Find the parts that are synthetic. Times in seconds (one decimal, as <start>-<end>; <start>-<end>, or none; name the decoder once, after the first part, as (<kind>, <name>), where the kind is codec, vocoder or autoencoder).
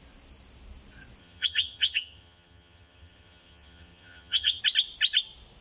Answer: 1.2-4.6 (vocoder, HiFi-GAN)